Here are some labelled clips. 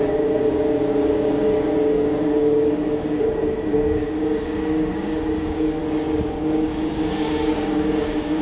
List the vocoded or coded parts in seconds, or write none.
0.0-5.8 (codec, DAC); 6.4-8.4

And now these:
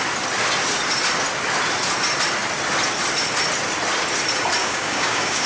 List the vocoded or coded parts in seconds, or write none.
4.6-5.5 (codec, DAC)

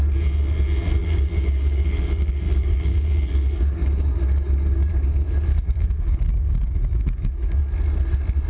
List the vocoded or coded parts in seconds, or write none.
1.0-4.9 (codec, DAC); 5.5-7.6

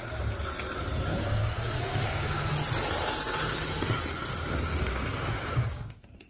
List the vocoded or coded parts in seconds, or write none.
1.1-2.5 (codec, DAC); 4.7-6.3